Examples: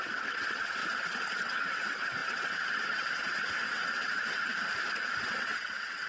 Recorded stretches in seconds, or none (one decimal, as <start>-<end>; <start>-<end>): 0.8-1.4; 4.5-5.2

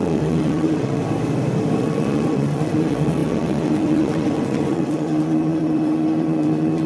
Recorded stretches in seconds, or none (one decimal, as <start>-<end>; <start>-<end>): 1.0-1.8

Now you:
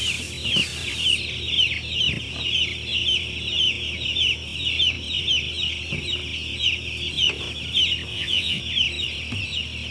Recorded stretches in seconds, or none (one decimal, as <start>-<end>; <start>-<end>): 0.0-8.1; 8.6-9.9

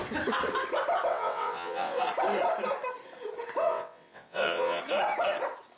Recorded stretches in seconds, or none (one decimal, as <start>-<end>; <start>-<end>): 0.0-1.1; 2.0-3.6; 4.8-5.8

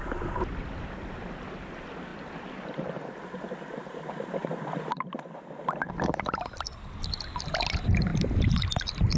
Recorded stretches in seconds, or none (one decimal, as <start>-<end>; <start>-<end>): 0.0-9.2

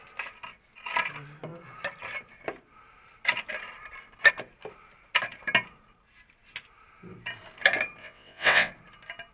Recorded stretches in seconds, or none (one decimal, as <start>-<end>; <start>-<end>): 0.0-8.0; 8.7-9.3